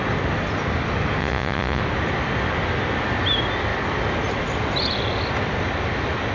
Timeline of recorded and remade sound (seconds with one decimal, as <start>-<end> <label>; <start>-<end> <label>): 0.0-1.2 recorded; 1.2-1.8 remade; 1.8-6.3 recorded